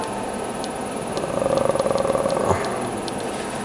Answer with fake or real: real